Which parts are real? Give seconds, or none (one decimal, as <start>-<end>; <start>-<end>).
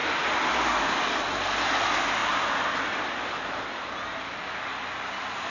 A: 0.0-5.5